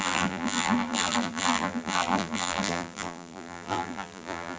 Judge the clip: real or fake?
fake